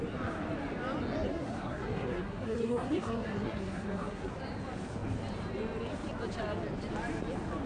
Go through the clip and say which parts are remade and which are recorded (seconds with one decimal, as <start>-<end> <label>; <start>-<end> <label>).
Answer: 0.0-1.3 recorded; 1.3-4.3 remade; 4.3-7.7 recorded